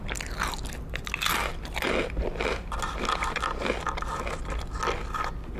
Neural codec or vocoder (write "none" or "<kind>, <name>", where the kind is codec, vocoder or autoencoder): none